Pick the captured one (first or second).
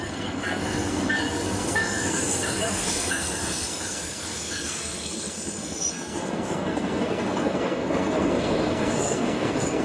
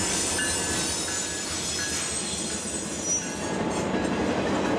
second